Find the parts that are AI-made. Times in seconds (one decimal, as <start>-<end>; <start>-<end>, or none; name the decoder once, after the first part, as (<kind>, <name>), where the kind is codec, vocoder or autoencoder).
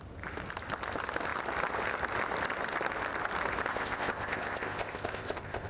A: 3.7-5.7 (codec, ZipCodec)